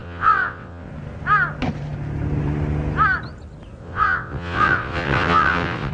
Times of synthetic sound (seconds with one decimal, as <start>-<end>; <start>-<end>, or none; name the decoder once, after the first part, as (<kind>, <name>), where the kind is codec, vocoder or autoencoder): 0.0-0.9 (vocoder, WaveNeXt); 3.8-5.9